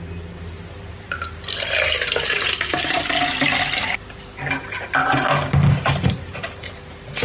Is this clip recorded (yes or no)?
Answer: yes